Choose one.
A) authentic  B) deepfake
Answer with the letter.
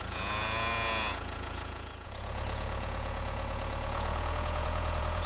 B